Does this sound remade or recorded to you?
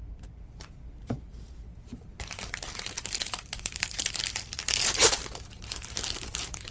remade